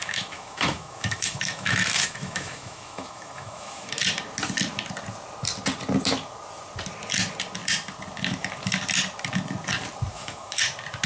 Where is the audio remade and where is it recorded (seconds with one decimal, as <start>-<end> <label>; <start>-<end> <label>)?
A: 0.0-3.9 remade; 3.9-10.1 recorded; 10.1-10.6 remade; 10.6-11.1 recorded